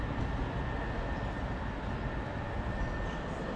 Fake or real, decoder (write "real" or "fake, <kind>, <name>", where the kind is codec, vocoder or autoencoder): real